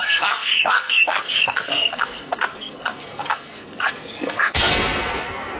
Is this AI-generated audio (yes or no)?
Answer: yes